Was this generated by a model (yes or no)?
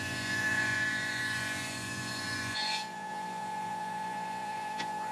yes